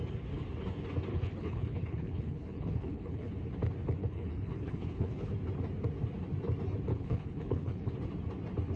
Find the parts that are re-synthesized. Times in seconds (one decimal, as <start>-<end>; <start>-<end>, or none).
1.1-3.3; 4.0-5.3; 6.9-7.9